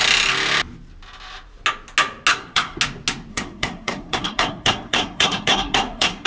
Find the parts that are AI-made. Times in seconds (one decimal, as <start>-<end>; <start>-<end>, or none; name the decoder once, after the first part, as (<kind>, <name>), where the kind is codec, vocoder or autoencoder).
2.3-2.8 (codec, SNAC); 3.3-6.3